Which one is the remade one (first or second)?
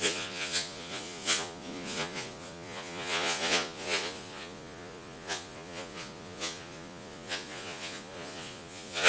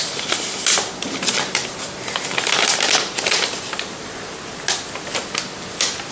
first